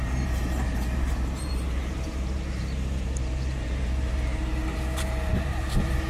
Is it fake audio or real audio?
fake